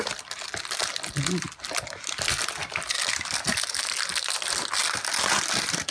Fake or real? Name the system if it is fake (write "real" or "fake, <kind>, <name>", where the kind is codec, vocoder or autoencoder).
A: real